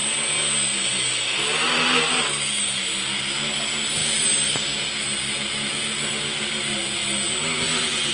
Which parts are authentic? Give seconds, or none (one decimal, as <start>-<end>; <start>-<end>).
0.0-8.1

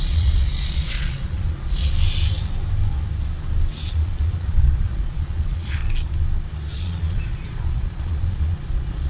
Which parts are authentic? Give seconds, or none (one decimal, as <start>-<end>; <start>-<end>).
1.8-3.9; 5.8-6.8

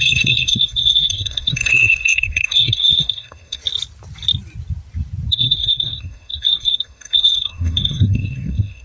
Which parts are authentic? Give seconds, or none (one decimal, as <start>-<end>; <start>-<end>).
3.6-5.3

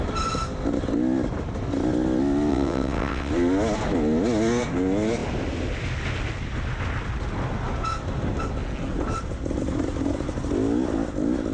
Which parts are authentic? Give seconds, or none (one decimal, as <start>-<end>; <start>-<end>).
0.0-2.5; 3.3-11.5

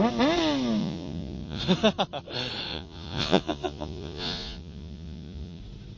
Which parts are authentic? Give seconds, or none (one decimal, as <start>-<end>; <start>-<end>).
0.0-0.8; 1.6-2.7; 5.6-6.0

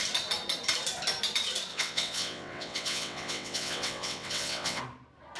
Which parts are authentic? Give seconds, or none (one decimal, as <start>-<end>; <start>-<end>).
0.0-1.7; 4.8-5.4